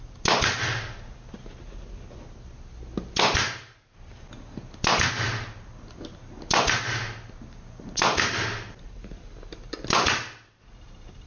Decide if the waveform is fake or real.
real